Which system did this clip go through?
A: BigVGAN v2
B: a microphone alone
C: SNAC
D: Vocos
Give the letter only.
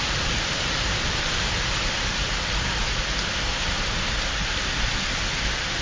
A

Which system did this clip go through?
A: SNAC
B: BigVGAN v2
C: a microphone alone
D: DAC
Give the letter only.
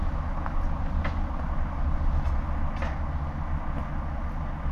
C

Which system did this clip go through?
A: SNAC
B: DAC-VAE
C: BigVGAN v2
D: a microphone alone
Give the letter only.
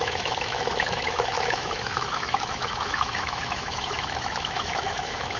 B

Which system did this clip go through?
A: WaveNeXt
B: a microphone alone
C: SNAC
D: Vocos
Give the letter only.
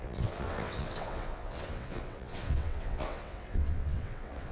A